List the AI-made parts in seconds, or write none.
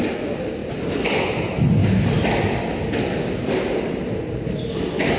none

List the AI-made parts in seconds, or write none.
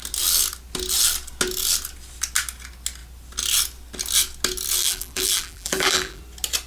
4.8-6.2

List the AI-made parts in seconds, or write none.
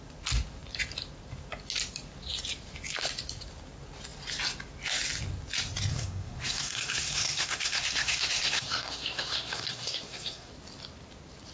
5.9-10.5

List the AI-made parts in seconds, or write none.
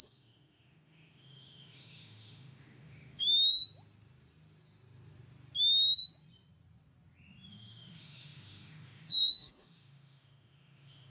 0.0-3.6; 7.5-11.1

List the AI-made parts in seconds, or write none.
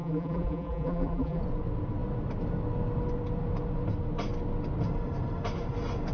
0.0-1.4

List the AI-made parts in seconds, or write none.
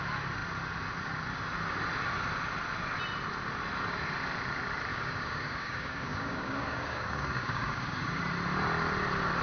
4.9-8.2